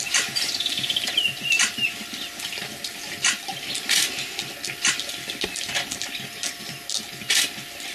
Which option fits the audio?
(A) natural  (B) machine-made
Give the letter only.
A